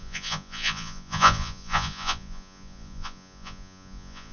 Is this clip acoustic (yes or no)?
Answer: no